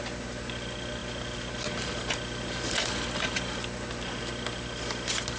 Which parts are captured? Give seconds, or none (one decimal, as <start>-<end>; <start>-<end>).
0.0-5.4